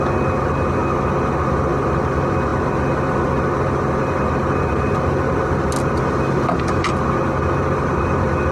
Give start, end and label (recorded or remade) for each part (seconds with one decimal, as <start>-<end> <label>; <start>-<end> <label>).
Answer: 0.0-8.5 recorded